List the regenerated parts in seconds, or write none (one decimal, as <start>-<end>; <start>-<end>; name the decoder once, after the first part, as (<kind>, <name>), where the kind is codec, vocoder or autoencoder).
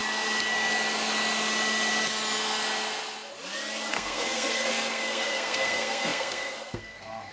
3.9-7.3 (codec, SNAC)